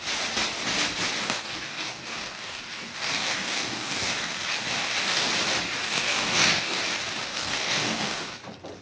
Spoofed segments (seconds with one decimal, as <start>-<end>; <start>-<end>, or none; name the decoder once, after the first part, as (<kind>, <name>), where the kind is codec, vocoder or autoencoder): 1.2-5.3 (codec, DAC); 5.8-6.8; 7.2-8.4